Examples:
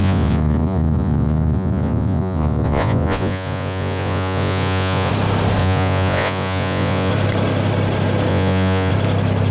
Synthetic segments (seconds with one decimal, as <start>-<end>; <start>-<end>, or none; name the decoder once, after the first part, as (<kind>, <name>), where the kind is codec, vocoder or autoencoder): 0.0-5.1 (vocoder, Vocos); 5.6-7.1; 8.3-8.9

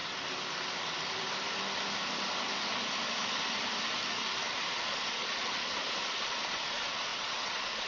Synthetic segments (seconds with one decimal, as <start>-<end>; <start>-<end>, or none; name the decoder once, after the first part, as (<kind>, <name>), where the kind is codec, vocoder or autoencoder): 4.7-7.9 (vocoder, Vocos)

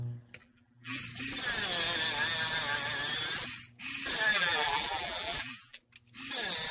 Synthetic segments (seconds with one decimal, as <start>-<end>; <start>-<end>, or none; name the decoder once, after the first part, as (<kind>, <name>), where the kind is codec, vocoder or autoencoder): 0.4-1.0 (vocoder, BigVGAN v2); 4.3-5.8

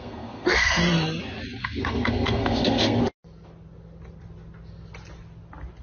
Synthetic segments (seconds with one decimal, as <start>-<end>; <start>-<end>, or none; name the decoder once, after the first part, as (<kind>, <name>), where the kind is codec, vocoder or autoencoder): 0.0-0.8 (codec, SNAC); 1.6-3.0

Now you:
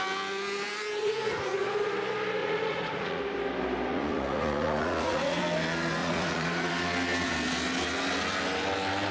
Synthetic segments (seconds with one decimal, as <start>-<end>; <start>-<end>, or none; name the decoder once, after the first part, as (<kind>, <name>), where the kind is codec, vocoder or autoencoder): 1.0-1.7 (vocoder, Vocos); 2.4-3.2; 3.9-5.4; 6.0-6.7

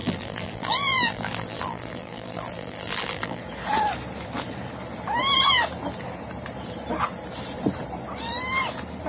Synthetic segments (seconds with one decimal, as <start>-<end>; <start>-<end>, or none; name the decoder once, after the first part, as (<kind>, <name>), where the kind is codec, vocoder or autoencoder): 0.0-3.4 (vocoder, BigVGAN v2)

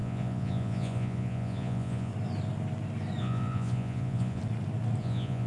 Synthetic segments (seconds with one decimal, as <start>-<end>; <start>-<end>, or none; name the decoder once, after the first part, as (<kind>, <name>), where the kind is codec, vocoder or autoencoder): 0.0-2.1 (vocoder, Vocos); 3.2-4.4; 5.0-5.5

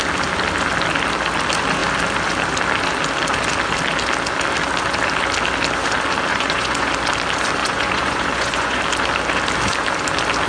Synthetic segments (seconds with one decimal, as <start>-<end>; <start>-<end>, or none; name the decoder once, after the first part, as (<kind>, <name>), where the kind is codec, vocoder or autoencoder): 6.3-6.9 (vocoder, Vocos); 7.6-8.8